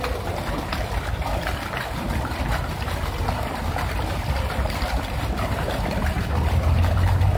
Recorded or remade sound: remade